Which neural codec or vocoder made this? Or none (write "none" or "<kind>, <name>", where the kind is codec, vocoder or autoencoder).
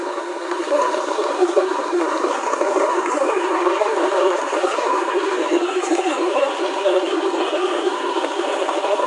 codec, SNAC